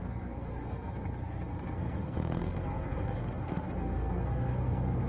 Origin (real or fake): fake